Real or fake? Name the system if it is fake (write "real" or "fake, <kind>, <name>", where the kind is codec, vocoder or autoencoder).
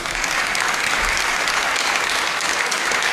fake, codec, DAC